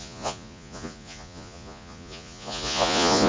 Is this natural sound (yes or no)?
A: no